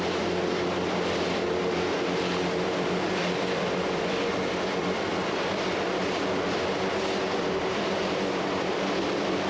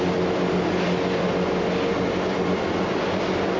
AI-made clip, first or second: first